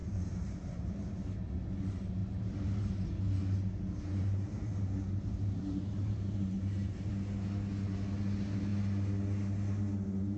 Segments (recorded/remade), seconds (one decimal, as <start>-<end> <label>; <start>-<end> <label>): 0.0-1.1 remade; 1.1-2.2 recorded; 2.2-3.0 remade; 3.0-4.1 recorded; 4.1-7.1 remade; 7.1-10.4 recorded